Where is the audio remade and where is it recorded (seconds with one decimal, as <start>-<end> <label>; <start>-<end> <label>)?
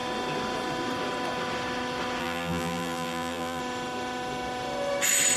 0.0-2.2 recorded; 2.2-3.6 remade; 3.6-5.4 recorded